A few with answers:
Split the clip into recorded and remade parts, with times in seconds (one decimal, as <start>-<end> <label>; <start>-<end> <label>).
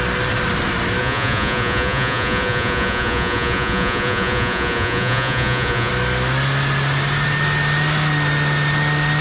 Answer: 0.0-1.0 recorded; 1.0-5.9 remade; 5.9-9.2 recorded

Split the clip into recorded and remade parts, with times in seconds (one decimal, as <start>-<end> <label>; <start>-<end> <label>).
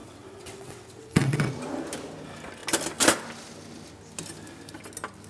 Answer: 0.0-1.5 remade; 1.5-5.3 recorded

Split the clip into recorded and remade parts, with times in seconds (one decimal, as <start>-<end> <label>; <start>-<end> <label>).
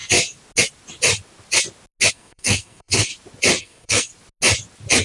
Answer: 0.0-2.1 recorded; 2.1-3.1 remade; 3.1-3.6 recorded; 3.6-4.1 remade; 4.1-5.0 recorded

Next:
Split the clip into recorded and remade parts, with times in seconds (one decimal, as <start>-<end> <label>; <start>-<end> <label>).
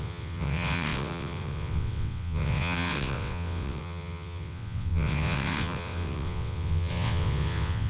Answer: 0.0-7.9 remade